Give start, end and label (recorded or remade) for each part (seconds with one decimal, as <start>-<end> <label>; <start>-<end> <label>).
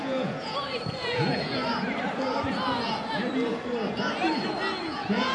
0.0-1.6 remade; 1.6-4.8 recorded; 4.8-5.3 remade